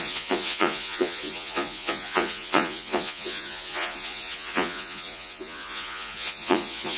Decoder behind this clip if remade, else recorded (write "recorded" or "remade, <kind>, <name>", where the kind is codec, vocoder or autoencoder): remade, vocoder, Vocos